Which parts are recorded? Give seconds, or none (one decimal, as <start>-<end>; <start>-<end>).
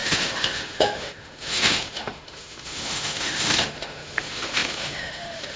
none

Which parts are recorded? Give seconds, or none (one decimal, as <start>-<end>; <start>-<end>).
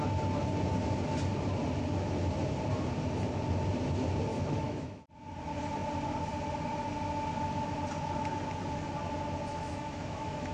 0.0-4.3; 5.1-9.5